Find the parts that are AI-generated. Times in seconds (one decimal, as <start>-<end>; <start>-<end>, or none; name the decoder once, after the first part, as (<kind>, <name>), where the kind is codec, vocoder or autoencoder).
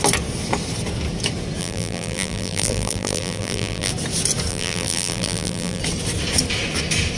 1.6-3.9 (vocoder, BigVGAN v2); 4.5-5.8